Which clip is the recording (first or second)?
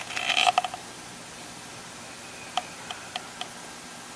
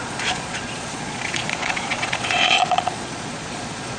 first